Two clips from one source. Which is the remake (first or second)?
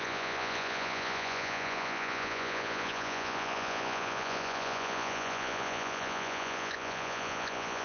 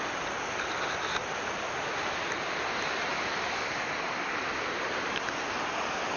first